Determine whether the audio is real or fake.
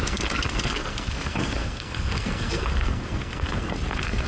fake